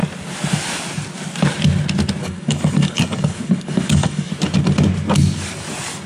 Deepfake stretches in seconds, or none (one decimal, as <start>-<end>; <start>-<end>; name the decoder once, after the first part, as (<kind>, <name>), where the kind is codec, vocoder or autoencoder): 2.2-4.3 (codec, DAC)